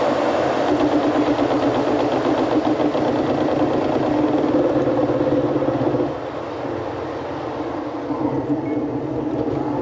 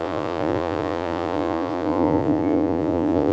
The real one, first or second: first